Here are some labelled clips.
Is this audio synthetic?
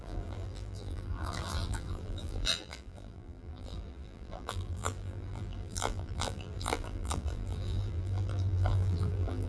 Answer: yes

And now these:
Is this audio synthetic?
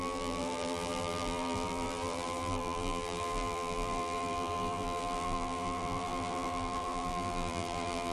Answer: yes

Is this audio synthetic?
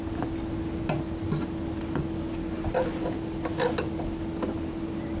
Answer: no